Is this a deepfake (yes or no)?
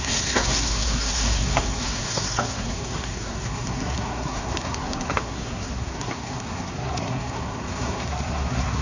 yes